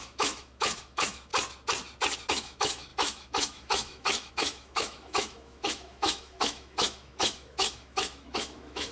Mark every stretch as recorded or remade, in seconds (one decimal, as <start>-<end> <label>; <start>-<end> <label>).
0.0-1.3 remade; 1.3-2.3 recorded; 2.3-8.9 remade